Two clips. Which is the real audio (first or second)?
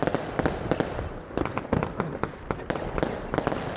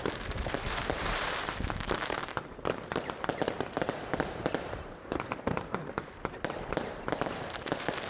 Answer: first